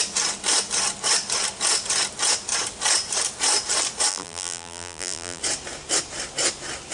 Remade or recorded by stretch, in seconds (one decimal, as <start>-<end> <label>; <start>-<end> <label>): 0.0-4.1 recorded; 4.1-5.4 remade; 5.4-6.9 recorded